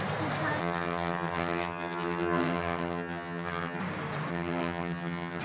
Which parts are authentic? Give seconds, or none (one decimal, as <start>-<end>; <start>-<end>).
0.0-0.6; 3.8-4.3